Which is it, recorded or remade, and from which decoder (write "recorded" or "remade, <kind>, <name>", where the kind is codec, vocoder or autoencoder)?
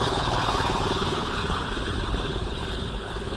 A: remade, codec, HILCodec